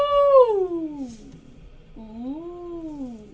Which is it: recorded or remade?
recorded